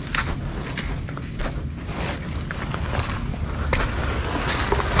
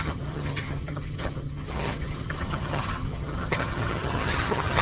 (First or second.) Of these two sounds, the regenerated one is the second